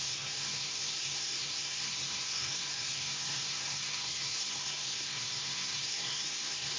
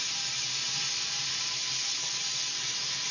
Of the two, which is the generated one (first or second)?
first